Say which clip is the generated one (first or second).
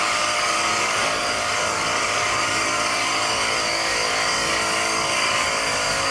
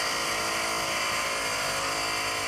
first